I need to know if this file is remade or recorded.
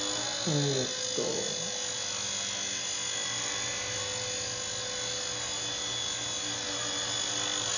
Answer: recorded